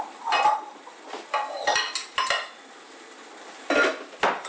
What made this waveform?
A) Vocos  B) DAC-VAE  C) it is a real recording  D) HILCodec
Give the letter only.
C